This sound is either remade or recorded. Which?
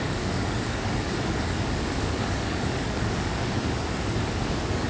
remade